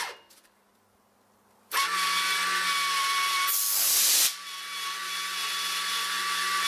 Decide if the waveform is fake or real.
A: real